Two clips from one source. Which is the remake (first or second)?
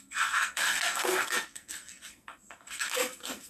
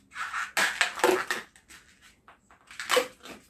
first